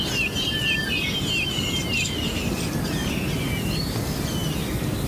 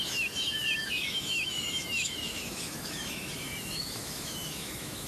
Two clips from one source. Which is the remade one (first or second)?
second